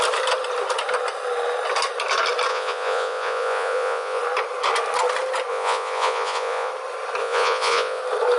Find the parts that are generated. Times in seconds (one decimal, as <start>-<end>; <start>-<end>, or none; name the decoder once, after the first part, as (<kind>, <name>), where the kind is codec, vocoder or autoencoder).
2.5-4.2 (vocoder, Vocos); 5.5-6.7; 7.2-8.0

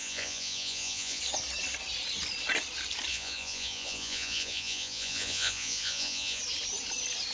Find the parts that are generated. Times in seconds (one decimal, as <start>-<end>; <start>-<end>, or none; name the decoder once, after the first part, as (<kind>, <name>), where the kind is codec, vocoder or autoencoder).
0.0-1.2 (vocoder, Vocos); 3.1-6.4

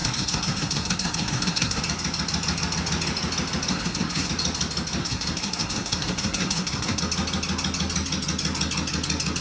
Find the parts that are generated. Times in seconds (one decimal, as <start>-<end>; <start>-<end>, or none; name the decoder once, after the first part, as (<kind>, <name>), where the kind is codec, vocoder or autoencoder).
0.0-1.8 (codec, SNAC); 3.7-4.3; 5.0-7.0

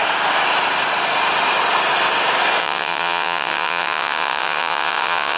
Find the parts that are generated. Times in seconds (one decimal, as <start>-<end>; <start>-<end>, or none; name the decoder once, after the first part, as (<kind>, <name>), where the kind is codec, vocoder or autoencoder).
2.6-5.4 (vocoder, WaveNeXt)